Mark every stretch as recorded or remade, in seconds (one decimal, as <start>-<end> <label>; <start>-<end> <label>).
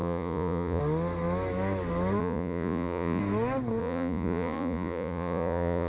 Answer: 0.0-0.8 remade; 0.8-2.2 recorded; 2.2-3.2 remade; 3.2-3.8 recorded; 3.8-5.9 remade